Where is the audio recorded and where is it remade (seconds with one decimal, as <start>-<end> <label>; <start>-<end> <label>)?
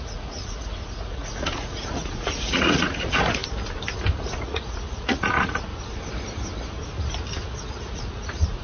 0.0-3.4 remade; 3.4-4.1 recorded; 4.1-5.7 remade; 5.7-7.8 recorded; 7.8-8.6 remade